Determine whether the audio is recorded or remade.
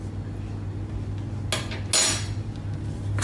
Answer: recorded